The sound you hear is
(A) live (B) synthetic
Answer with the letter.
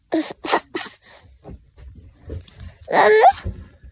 A